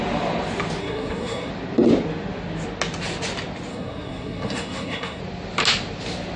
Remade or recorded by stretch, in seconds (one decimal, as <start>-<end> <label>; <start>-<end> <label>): 0.0-0.8 recorded; 0.8-1.5 remade; 1.5-3.7 recorded; 3.7-5.2 remade; 5.2-6.4 recorded